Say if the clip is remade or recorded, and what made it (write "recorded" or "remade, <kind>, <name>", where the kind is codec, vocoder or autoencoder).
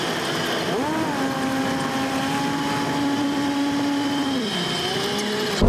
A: recorded